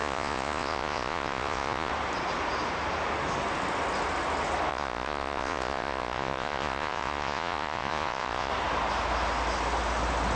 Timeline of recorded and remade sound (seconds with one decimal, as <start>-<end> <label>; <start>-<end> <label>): 0.0-1.9 remade; 1.9-4.7 recorded; 4.7-8.5 remade; 8.5-10.4 recorded